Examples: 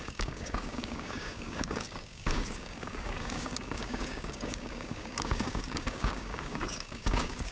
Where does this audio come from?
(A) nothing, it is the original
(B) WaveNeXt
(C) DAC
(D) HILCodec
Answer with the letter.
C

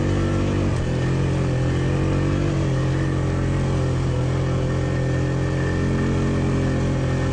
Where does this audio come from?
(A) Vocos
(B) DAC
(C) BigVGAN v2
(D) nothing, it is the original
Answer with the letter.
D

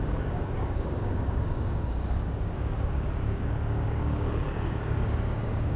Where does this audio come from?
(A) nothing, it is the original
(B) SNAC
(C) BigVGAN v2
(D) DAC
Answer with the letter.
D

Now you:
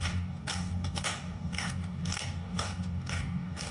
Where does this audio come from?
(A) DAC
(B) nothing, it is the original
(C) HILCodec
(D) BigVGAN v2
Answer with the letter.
A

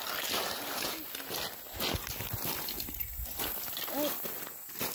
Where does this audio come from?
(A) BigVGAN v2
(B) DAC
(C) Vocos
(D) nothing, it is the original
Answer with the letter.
D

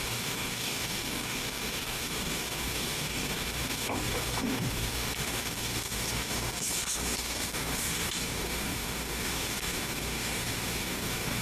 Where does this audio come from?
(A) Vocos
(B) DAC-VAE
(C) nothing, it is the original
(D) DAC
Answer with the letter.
D